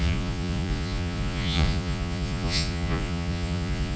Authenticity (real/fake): fake